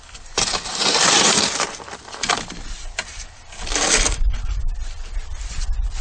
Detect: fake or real fake